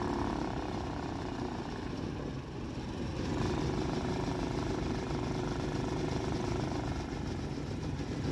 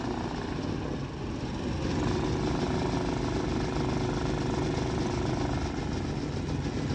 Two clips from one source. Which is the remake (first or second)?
first